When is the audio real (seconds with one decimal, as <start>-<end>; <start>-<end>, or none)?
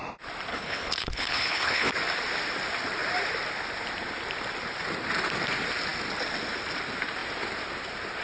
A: 0.0-0.5; 1.9-8.2